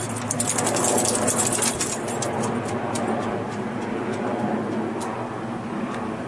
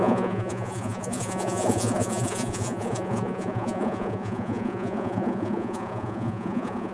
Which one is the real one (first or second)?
first